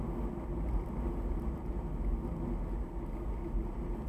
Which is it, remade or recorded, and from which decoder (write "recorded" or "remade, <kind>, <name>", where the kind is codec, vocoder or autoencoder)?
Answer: recorded